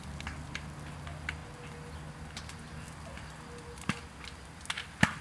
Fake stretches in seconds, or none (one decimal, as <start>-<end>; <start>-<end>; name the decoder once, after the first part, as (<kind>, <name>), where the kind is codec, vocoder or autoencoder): none

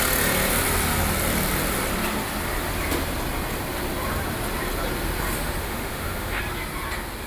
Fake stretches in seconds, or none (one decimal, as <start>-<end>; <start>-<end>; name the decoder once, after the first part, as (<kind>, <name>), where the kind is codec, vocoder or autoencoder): 5.6-6.4 (autoencoder, DAC-VAE)